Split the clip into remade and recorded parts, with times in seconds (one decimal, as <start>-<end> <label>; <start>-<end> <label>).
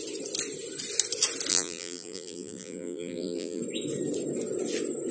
0.0-1.5 recorded; 1.5-3.6 remade; 3.6-5.1 recorded